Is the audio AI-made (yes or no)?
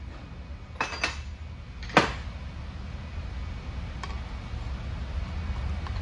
no